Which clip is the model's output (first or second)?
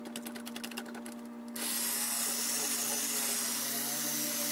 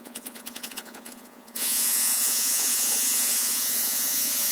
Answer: second